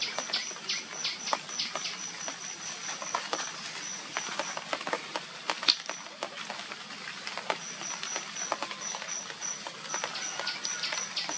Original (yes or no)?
yes